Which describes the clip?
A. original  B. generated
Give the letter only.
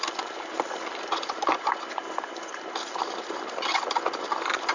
B